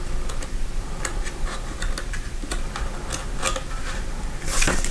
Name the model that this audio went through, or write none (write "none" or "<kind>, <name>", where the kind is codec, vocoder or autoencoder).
none